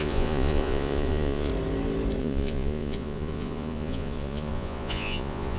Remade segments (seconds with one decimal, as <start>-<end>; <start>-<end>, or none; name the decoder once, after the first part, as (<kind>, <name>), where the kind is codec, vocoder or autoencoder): 0.0-1.5 (vocoder, Vocos); 2.2-5.6